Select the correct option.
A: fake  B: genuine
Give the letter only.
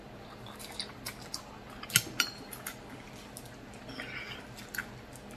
B